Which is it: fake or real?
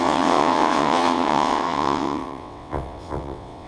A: fake